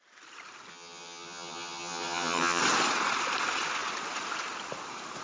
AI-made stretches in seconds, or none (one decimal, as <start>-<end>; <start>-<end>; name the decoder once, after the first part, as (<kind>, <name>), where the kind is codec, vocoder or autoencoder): 0.7-2.6 (vocoder, HiFi-GAN)